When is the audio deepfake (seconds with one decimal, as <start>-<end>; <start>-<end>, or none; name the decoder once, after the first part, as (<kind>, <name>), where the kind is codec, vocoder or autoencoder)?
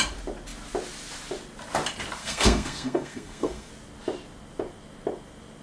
2.2-3.7 (codec, SNAC)